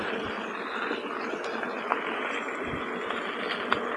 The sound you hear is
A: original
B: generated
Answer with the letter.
A